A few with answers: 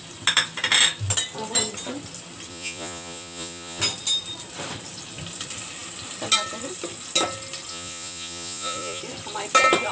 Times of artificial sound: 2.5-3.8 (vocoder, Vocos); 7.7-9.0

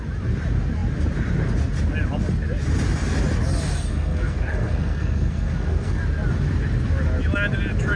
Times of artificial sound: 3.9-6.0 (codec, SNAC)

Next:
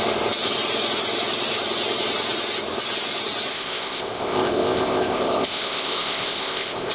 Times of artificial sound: 3.5-6.9 (codec, ZipCodec)

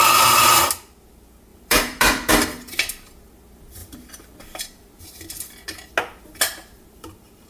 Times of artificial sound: 1.5-2.3 (vocoder, BigVGAN v2)

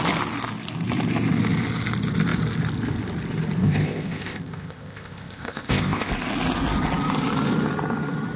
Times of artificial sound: 3.6-6.1 (codec, ZipCodec)

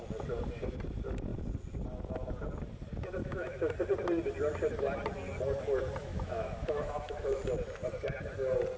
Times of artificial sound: 3.2-3.7 (autoencoder, DAC-VAE); 6.0-7.4

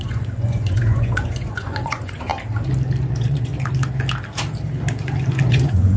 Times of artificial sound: 0.0-2.3 (vocoder, Vocos); 3.1-3.5; 5.5-6.0

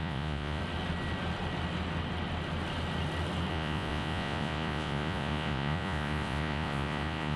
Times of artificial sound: 0.0-0.6 (vocoder, Vocos); 3.5-7.4